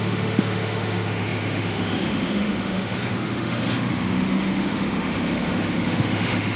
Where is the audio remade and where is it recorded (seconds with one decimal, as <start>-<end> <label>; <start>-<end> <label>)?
0.0-6.6 remade